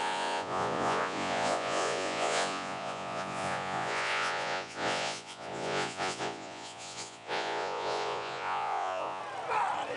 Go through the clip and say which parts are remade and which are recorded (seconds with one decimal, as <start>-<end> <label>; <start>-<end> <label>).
0.0-9.2 remade; 9.2-10.0 recorded